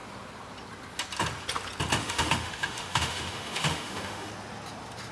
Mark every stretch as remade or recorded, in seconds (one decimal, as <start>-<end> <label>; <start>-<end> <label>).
0.0-2.0 recorded; 2.0-4.3 remade; 4.3-5.1 recorded